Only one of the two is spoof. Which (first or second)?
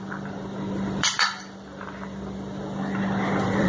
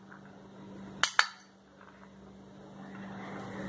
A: first